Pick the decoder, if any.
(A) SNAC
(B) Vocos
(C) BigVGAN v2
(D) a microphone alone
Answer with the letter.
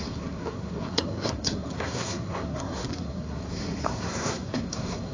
A